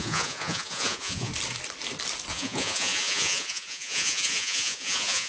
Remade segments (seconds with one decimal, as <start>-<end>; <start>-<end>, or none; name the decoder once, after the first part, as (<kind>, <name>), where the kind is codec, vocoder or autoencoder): 0.0-1.3 (vocoder, Vocos); 2.3-5.3